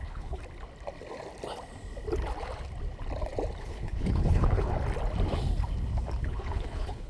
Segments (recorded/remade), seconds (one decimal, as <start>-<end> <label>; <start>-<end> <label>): 0.0-0.4 remade; 0.4-3.6 recorded; 3.6-4.7 remade; 4.7-6.2 recorded; 6.2-7.1 remade